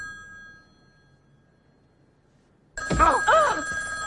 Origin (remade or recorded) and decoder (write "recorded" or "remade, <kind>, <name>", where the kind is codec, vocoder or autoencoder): recorded